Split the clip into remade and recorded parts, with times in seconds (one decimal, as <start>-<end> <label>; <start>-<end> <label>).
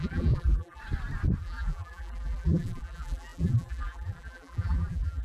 0.0-0.8 remade; 0.8-1.4 recorded; 1.4-5.2 remade